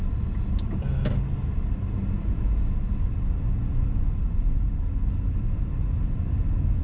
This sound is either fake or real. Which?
real